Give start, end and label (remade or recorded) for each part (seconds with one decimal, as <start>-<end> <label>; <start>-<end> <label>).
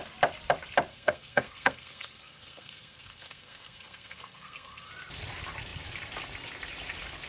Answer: 0.0-0.9 recorded; 0.9-4.9 remade; 4.9-7.3 recorded